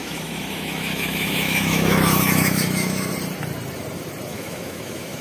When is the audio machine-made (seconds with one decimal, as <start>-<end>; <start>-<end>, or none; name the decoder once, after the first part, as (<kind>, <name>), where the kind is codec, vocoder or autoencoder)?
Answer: 0.0-3.1 (autoencoder, DAC-VAE); 4.3-5.2